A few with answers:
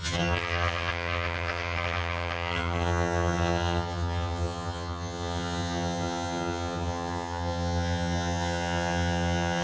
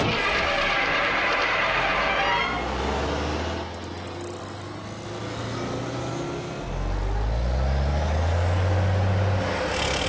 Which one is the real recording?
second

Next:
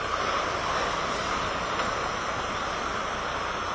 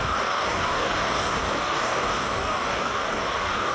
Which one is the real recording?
first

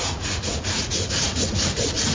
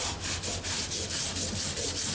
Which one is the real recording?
second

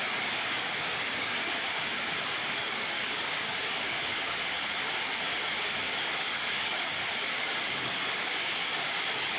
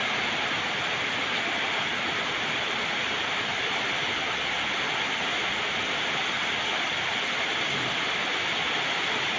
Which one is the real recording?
second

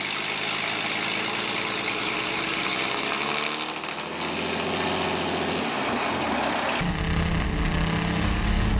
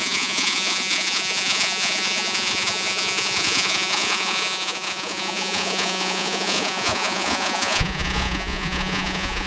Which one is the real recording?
first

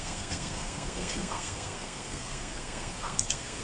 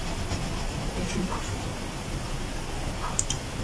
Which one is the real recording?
second